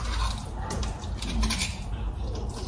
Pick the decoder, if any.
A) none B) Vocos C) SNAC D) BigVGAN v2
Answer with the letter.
A